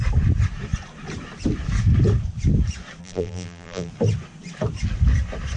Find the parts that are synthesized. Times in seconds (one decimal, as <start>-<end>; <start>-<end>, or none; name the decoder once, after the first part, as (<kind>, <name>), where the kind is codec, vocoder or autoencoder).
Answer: 3.0-3.9 (vocoder, BigVGAN v2)